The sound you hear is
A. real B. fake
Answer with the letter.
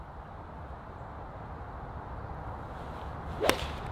A